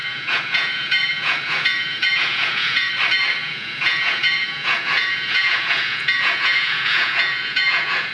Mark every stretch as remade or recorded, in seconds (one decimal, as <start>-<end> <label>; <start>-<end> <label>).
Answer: 0.0-2.9 remade; 2.9-3.4 recorded; 3.4-8.1 remade